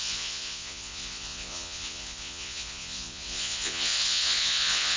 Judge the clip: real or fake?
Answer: fake